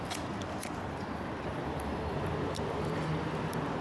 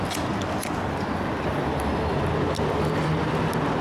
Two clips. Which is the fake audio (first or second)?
first